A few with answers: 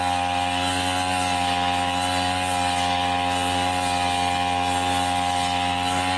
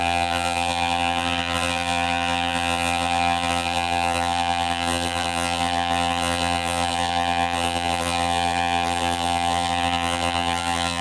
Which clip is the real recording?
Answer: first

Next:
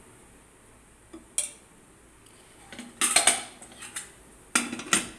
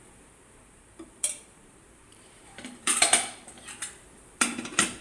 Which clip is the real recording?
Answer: first